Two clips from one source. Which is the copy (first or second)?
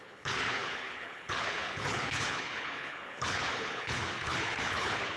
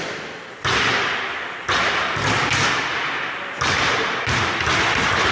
first